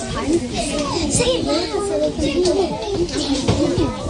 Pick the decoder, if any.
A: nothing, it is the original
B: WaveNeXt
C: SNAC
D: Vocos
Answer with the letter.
A